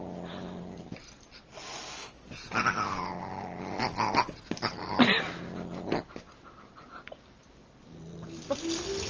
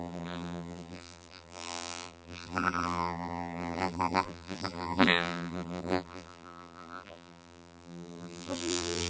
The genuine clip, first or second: first